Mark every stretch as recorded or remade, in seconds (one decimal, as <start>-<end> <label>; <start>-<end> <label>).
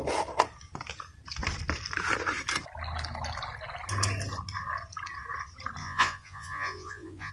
0.0-5.8 recorded; 5.8-7.3 remade